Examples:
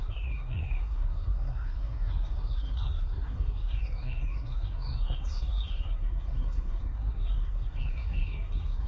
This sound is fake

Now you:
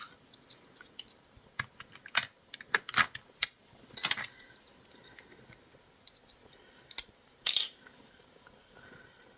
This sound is real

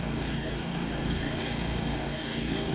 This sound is fake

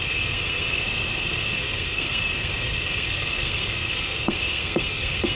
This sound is fake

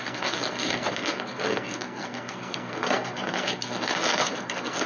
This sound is fake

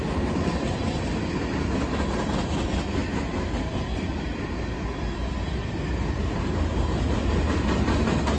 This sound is real